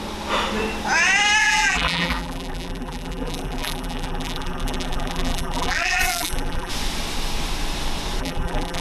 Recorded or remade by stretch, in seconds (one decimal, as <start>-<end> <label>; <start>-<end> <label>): 0.0-1.4 recorded; 1.4-6.7 remade; 6.7-8.2 recorded; 8.2-8.8 remade